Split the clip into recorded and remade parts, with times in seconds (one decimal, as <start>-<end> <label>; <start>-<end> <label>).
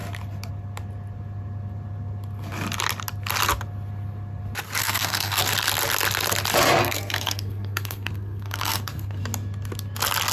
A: 0.0-4.8 recorded; 4.8-5.4 remade; 5.4-6.8 recorded; 6.8-9.2 remade; 9.2-10.3 recorded